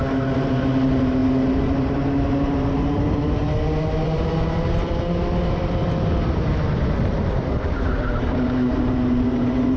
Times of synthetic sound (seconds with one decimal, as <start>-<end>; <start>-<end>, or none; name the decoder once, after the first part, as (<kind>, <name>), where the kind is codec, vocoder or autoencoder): 0.0-3.4 (vocoder, BigVGAN v2); 6.8-9.8